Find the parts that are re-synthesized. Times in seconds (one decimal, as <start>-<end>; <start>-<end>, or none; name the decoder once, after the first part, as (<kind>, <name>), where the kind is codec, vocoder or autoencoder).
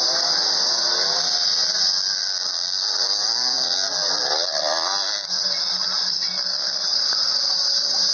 none